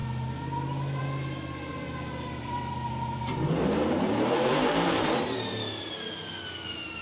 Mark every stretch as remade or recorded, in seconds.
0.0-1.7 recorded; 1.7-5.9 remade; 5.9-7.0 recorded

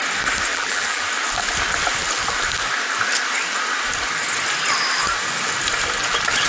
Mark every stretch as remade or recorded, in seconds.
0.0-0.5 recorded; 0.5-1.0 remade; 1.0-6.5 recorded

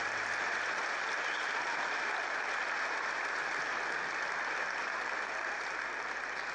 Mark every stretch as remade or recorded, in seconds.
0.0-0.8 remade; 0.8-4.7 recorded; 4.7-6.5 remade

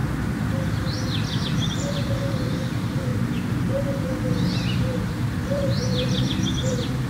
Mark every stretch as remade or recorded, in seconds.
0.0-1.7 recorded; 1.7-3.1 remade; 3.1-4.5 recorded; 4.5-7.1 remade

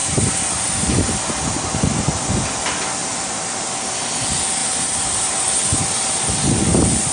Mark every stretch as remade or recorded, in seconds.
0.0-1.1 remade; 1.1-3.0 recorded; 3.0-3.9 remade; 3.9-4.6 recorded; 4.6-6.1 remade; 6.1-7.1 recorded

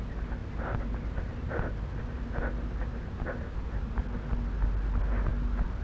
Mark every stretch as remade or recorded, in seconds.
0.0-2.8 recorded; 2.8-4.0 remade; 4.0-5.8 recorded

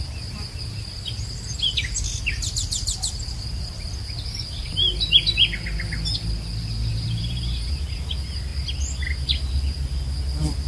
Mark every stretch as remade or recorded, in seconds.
0.0-6.9 recorded; 6.9-8.1 remade; 8.1-10.7 recorded